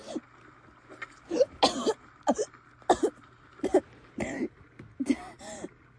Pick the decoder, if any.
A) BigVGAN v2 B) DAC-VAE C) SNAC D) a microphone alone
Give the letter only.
D